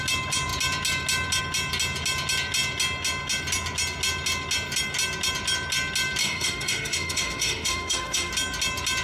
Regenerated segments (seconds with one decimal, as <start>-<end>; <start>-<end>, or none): 6.2-8.3